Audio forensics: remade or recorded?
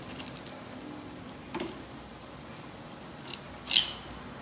recorded